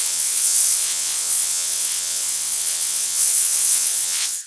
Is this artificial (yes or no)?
yes